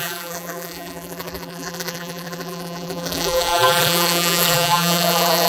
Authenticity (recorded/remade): remade